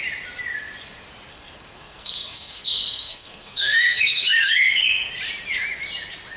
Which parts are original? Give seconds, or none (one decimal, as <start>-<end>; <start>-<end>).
0.0-1.3; 5.1-6.4